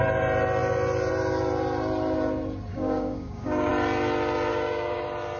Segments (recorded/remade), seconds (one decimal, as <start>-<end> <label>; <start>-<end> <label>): 0.0-2.7 recorded; 2.7-3.7 remade; 3.7-4.5 recorded; 4.5-5.0 remade; 5.0-5.4 recorded

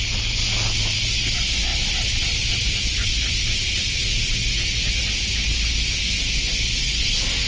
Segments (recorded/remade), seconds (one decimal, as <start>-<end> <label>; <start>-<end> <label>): 0.0-7.5 recorded

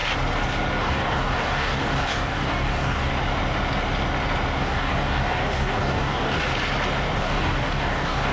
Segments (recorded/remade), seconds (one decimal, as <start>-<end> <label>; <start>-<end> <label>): 0.0-0.8 recorded; 0.8-3.1 remade; 3.1-4.6 recorded; 4.6-6.5 remade; 6.5-7.2 recorded; 7.2-8.3 remade

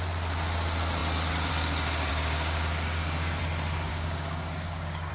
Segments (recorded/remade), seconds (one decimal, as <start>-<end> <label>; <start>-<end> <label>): 0.0-2.1 recorded; 2.1-3.4 remade; 3.4-3.9 recorded; 3.9-5.1 remade

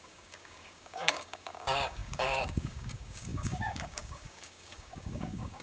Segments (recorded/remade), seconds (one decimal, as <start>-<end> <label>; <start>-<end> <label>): 0.0-5.6 remade

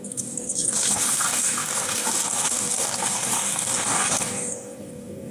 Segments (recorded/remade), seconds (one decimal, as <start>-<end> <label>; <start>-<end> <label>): 0.0-5.3 remade

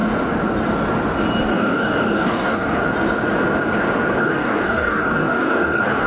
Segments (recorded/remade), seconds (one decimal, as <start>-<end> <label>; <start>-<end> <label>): 0.0-1.4 recorded; 1.4-2.8 remade; 2.8-4.2 recorded; 4.2-6.1 remade

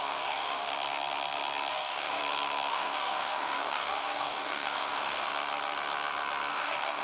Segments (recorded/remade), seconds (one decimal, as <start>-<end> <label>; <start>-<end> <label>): 0.0-0.7 remade; 0.7-1.7 recorded; 1.7-2.2 remade; 2.2-2.7 recorded; 2.7-5.3 remade; 5.3-6.5 recorded; 6.5-7.0 remade